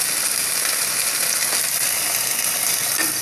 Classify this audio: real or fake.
real